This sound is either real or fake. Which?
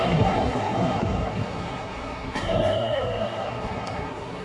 fake